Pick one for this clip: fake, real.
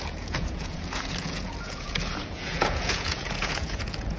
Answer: fake